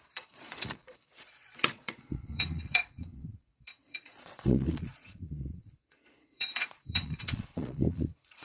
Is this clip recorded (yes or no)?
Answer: no